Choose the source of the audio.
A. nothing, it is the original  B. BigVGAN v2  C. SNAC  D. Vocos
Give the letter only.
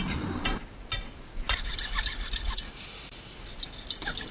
A